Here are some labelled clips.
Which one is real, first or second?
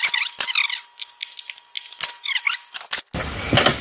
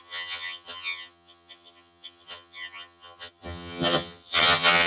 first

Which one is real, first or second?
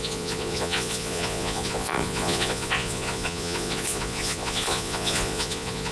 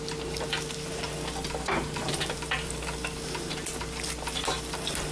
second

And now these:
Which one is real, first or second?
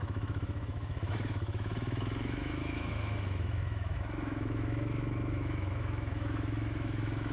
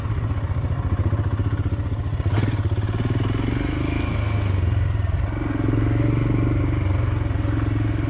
second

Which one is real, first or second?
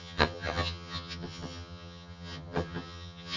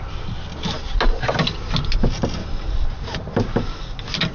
second